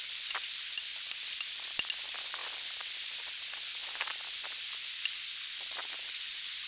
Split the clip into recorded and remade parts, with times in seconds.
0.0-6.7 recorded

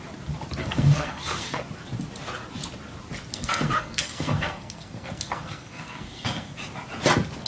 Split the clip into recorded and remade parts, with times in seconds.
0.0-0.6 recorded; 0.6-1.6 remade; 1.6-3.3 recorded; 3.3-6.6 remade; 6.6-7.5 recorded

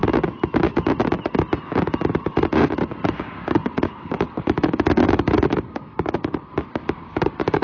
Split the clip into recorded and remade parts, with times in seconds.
0.0-3.2 recorded; 3.2-7.6 remade

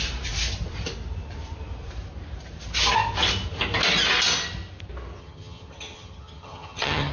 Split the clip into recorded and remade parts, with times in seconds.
0.0-5.2 recorded; 5.2-7.1 remade

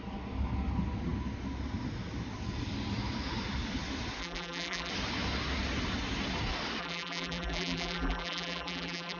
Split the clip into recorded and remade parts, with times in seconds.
0.0-4.2 recorded; 4.2-4.9 remade; 4.9-6.8 recorded; 6.8-9.2 remade

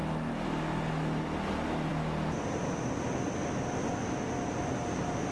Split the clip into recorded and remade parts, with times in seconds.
0.0-5.3 recorded

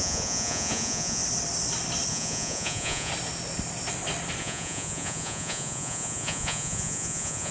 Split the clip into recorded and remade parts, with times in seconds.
0.0-1.2 remade; 1.2-2.1 recorded; 2.1-3.1 remade; 3.1-4.4 recorded; 4.4-7.5 remade

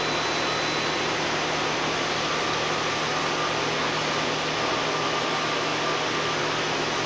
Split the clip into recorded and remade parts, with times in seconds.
0.0-7.1 recorded